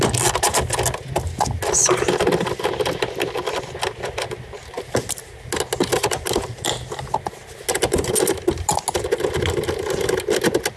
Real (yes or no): yes